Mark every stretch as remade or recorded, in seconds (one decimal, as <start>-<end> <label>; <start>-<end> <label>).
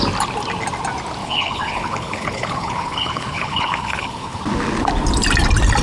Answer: 0.0-1.2 recorded; 1.2-4.4 remade; 4.4-5.8 recorded